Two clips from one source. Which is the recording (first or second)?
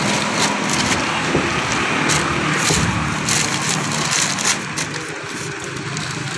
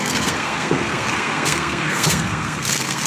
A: first